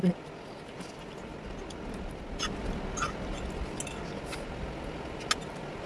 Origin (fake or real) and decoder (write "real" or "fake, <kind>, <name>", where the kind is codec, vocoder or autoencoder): real